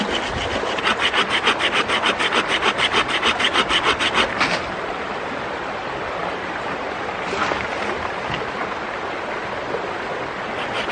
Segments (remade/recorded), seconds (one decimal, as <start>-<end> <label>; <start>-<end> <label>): 0.0-10.9 recorded